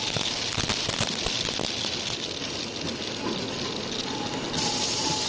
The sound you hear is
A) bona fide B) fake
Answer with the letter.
A